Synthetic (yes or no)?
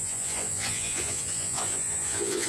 yes